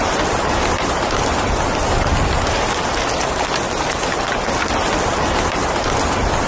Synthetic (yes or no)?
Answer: no